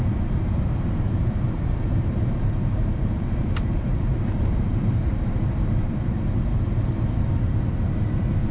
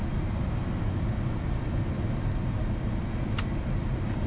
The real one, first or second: second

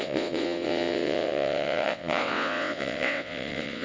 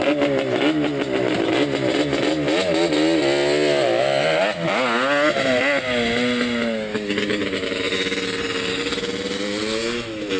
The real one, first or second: second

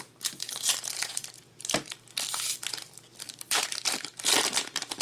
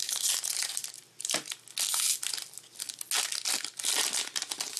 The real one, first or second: second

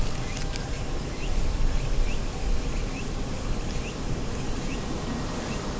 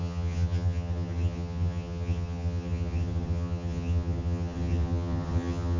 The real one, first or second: first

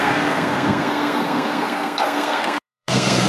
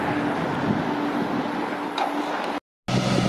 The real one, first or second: second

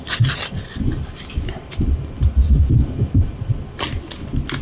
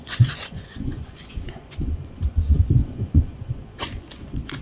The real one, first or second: first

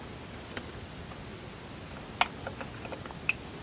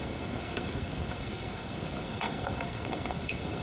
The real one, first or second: first